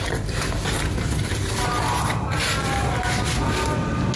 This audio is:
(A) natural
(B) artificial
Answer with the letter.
A